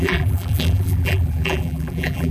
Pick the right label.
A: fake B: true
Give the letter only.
A